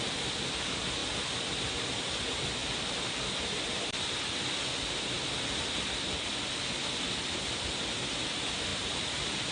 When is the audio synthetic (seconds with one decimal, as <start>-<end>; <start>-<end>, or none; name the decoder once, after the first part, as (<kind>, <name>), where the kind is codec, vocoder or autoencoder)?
1.0-1.7 (vocoder, BigVGAN v2); 2.6-3.6; 8.7-9.5